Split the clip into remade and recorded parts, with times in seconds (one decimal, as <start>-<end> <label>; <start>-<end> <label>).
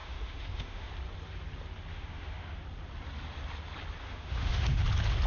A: 0.0-0.9 remade; 0.9-1.9 recorded; 1.9-2.4 remade; 2.4-4.0 recorded; 4.0-4.8 remade; 4.8-5.3 recorded